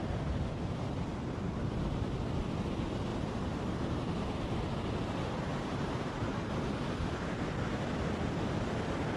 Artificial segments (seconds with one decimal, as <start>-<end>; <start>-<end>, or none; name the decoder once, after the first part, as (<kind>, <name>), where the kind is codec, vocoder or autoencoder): 3.1-4.1 (vocoder, BigVGAN v2); 5.5-6.3